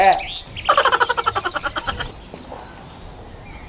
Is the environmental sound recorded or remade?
recorded